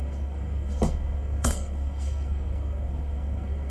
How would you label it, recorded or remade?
remade